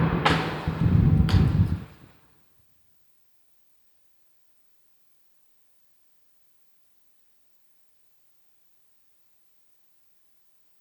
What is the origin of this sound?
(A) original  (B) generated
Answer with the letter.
B